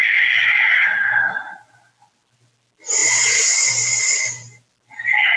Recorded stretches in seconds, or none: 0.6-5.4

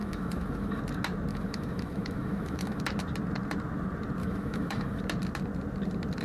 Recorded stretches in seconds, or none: 0.8-1.3; 2.8-4.2; 5.0-6.2

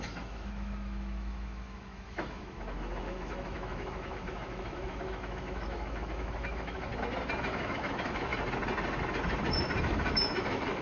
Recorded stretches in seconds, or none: 6.9-7.4; 8.3-9.8